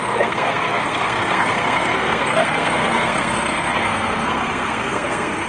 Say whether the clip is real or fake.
fake